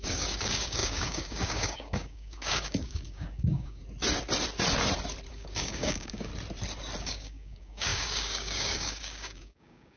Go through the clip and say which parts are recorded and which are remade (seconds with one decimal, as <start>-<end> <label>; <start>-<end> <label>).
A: 0.0-3.8 remade; 3.8-5.3 recorded; 5.3-6.3 remade; 6.3-7.0 recorded; 7.0-10.0 remade